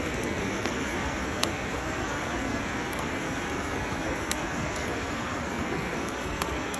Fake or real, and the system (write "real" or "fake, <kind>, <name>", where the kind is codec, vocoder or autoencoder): fake, codec, SNAC